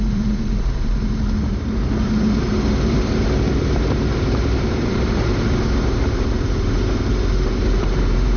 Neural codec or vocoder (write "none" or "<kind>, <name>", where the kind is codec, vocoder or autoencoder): vocoder, BigVGAN v2